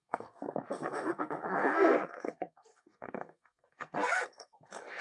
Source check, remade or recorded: remade